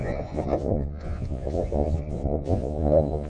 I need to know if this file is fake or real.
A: fake